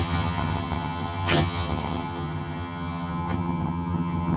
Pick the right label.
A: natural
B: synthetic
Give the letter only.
B